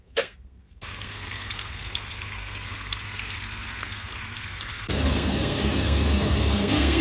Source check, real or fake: fake